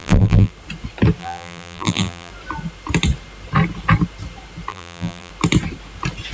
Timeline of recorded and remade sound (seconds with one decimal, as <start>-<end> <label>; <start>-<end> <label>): 0.0-0.5 remade; 0.5-1.2 recorded; 1.2-2.3 remade; 2.3-4.7 recorded; 4.7-5.3 remade; 5.3-6.3 recorded